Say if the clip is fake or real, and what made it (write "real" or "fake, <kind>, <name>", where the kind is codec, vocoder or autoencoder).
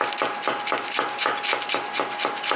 real